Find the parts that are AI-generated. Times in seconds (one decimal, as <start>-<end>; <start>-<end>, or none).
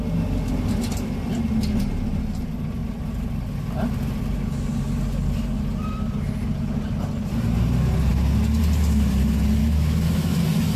9.6-10.4